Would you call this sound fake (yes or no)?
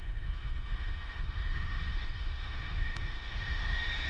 yes